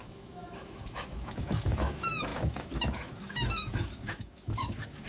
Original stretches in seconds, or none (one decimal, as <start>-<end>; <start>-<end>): none